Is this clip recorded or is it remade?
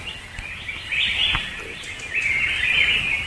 recorded